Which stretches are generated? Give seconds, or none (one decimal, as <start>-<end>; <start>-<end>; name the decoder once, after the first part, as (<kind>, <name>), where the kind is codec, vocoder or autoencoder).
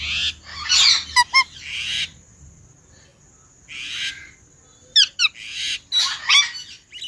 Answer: none